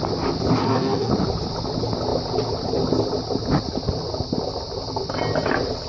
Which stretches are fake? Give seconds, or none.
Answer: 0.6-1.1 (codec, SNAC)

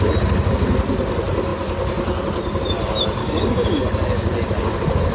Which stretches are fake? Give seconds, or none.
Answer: 3.2-3.8 (codec, DAC)

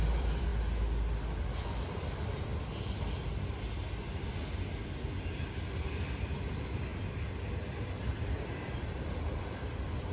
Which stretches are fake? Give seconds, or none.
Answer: 0.0-0.5 (vocoder, BigVGAN v2); 1.6-2.5; 5.1-6.9; 7.9-10.1

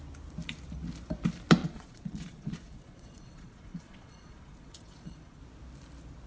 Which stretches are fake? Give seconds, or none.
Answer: 1.6-5.4 (vocoder, Vocos)